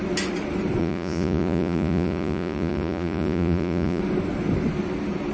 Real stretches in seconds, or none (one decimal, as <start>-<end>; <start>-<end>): 0.0-0.8; 4.0-5.3